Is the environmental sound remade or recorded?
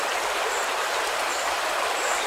remade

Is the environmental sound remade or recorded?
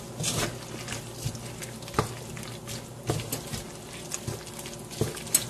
recorded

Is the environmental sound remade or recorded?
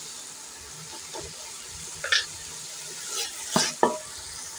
recorded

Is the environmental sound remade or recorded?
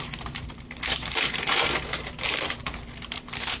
remade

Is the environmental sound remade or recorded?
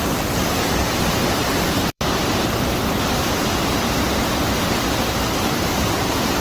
remade